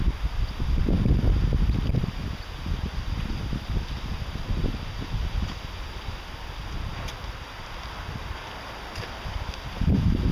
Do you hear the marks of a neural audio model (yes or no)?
no